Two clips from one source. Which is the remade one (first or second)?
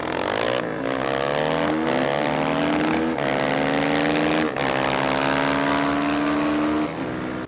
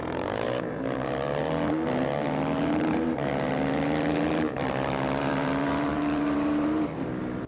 second